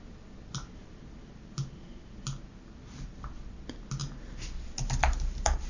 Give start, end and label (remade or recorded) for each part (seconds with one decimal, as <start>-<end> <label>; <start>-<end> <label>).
0.0-5.7 recorded